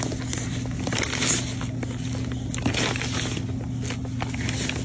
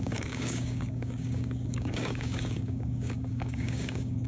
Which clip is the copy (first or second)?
second